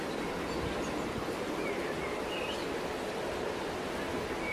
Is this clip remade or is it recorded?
recorded